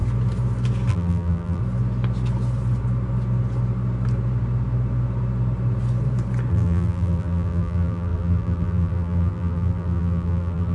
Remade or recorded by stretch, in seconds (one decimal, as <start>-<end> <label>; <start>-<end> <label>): 0.0-0.9 recorded; 0.9-1.6 remade; 1.6-6.5 recorded; 6.5-10.7 remade